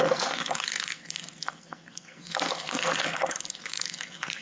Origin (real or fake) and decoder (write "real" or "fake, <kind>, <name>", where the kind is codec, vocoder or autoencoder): fake, codec, SNAC